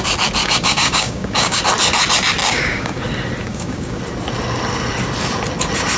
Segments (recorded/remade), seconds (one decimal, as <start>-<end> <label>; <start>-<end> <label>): 0.0-0.4 recorded; 0.4-1.6 remade; 1.6-2.4 recorded; 2.4-3.0 remade; 3.0-3.5 recorded; 3.5-4.0 remade; 4.0-6.0 recorded